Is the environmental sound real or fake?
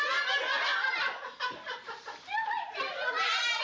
real